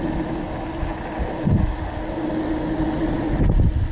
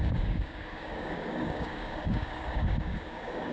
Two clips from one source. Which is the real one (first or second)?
first